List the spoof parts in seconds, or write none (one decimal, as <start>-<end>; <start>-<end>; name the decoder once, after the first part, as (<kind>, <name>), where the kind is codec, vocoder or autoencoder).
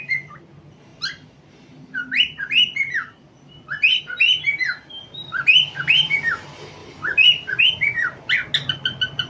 none